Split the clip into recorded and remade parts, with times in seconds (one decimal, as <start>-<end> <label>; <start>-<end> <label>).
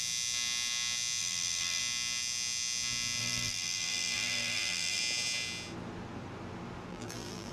0.0-1.2 recorded; 1.2-1.8 remade; 1.8-3.2 recorded; 3.2-5.0 remade; 5.0-6.9 recorded; 6.9-7.5 remade